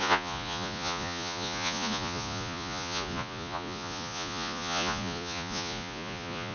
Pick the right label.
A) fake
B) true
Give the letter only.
A